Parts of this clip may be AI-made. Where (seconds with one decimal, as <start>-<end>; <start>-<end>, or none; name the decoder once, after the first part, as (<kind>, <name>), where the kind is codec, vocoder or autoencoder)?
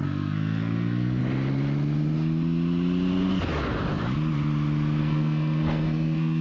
0.0-1.2 (codec, SNAC); 5.0-6.4